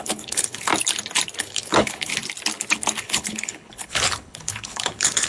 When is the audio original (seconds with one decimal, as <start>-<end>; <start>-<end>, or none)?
0.7-1.4; 2.1-3.0